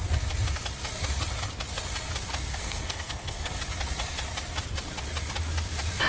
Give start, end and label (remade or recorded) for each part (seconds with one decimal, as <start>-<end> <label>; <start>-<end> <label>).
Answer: 0.0-2.5 recorded; 2.5-3.5 remade; 3.5-6.1 recorded